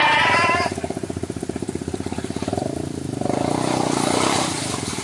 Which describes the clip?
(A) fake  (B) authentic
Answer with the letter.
A